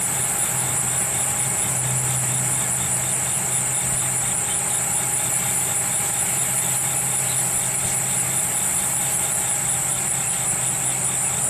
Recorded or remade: recorded